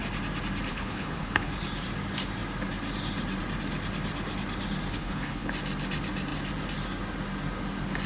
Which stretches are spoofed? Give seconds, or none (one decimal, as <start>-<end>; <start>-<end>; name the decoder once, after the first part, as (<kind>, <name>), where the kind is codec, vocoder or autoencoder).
0.7-1.5 (codec, HILCodec); 4.9-5.5